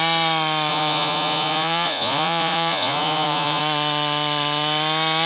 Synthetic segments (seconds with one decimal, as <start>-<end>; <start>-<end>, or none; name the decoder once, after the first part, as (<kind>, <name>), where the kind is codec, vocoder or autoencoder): 0.7-3.6 (vocoder, Vocos)